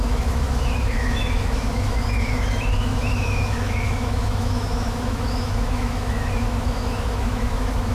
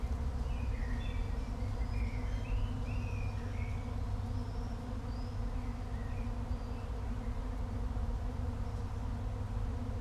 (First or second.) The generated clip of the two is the first